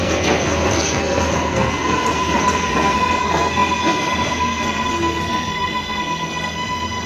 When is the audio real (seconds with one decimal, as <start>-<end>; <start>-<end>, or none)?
none